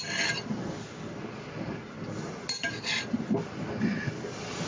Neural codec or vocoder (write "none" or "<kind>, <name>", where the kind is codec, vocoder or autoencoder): none